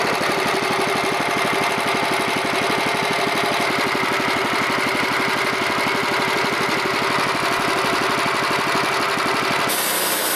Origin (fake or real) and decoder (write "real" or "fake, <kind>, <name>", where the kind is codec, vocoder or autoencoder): real